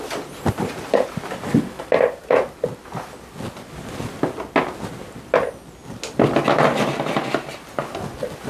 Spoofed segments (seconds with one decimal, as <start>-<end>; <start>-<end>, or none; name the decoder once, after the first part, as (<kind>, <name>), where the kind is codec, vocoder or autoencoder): none